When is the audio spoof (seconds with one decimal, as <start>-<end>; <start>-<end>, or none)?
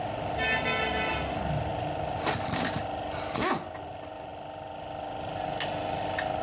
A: none